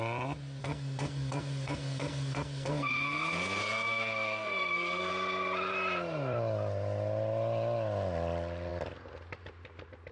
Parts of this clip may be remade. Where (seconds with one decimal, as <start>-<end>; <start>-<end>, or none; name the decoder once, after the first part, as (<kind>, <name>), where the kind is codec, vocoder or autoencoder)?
0.6-5.1 (codec, SNAC)